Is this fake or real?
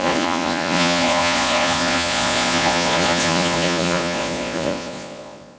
fake